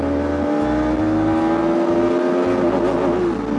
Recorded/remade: recorded